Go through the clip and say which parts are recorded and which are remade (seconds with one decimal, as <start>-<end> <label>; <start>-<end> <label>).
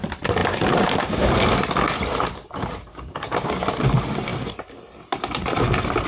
0.0-2.9 recorded; 2.9-3.6 remade; 3.6-6.1 recorded